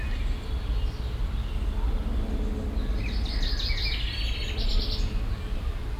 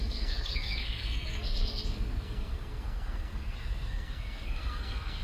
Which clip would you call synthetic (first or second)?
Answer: second